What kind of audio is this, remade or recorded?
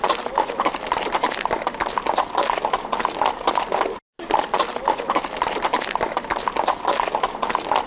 recorded